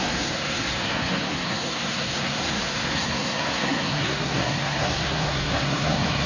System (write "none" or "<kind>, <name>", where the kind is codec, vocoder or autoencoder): codec, SNAC